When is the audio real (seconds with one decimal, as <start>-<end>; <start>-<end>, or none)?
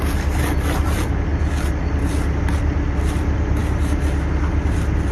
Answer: 0.0-5.1